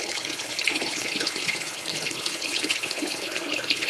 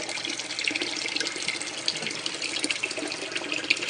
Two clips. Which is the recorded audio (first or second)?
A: second